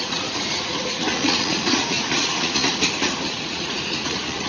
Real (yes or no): no